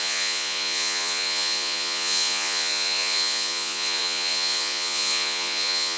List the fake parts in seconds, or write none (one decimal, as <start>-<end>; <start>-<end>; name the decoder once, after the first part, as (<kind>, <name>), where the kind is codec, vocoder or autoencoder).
0.0-6.0 (vocoder, Vocos)